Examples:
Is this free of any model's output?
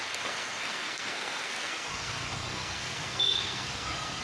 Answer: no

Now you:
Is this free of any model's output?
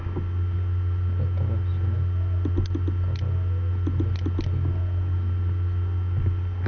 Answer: yes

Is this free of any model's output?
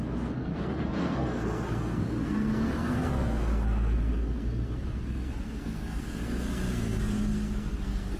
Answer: no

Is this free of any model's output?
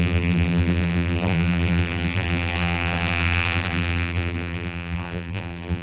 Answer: no